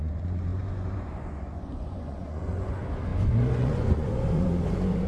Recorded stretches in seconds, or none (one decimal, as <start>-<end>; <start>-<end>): none